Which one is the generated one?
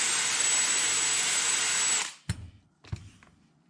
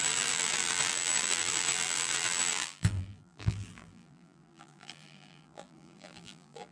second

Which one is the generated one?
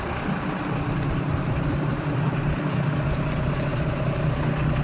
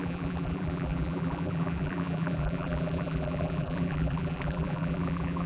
second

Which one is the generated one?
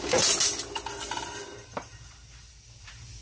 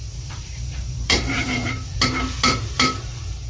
second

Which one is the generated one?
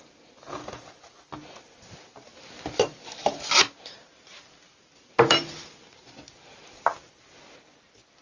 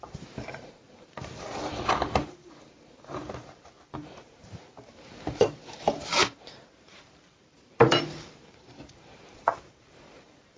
second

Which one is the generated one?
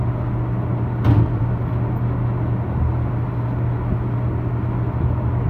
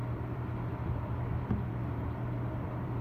second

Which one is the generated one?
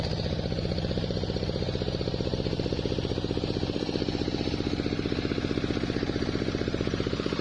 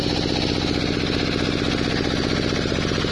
first